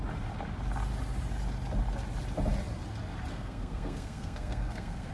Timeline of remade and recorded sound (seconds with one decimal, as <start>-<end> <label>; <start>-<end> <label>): 0.0-3.3 recorded; 3.3-5.1 remade